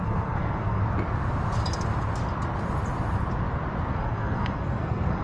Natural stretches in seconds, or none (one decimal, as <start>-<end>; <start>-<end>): 0.8-3.9